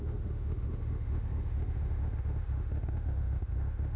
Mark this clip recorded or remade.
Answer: remade